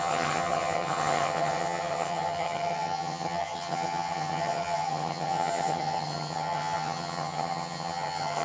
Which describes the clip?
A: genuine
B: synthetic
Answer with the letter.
B